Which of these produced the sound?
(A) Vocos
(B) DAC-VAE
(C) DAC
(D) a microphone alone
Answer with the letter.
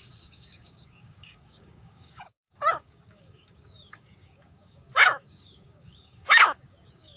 C